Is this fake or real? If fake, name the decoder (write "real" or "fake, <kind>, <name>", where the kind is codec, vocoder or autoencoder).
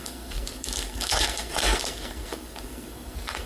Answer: fake, codec, SNAC